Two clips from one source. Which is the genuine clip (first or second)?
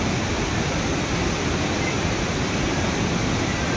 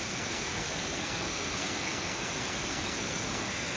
first